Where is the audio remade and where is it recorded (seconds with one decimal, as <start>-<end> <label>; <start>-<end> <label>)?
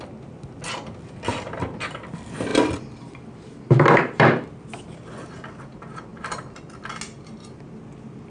0.0-2.5 recorded; 2.5-4.5 remade; 4.5-6.1 recorded; 6.1-6.6 remade; 6.6-8.3 recorded